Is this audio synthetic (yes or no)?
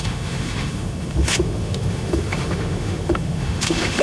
yes